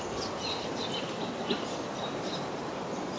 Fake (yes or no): no